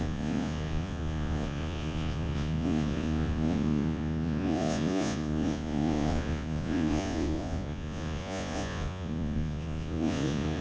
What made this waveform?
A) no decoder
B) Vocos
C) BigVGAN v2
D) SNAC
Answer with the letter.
B